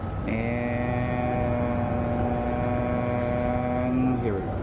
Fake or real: real